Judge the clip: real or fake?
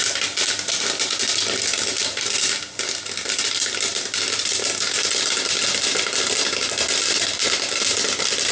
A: real